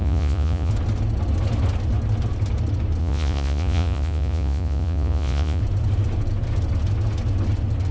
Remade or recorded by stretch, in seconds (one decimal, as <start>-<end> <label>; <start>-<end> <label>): 0.0-0.7 remade; 0.7-3.0 recorded; 3.0-5.6 remade; 5.6-7.9 recorded